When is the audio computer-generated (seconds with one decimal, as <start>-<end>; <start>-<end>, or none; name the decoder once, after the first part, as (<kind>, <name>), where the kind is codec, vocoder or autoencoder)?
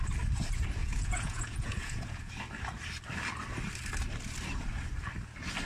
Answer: 0.8-2.3 (vocoder, Vocos)